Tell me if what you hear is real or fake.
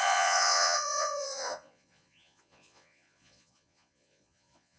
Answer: fake